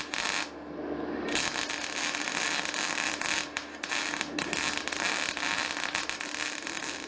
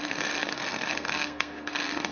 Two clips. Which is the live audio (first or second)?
first